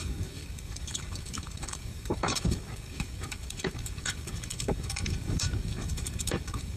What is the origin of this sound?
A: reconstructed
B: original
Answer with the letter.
A